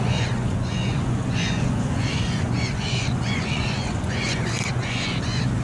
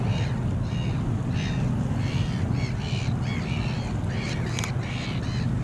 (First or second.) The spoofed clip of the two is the first